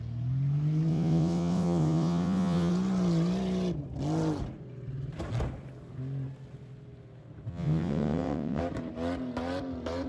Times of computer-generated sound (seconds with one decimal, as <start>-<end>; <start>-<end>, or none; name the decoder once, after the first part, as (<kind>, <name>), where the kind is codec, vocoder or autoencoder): 0.9-2.7 (vocoder, WaveNeXt); 7.5-8.6